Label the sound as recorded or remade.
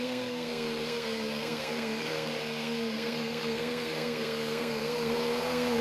remade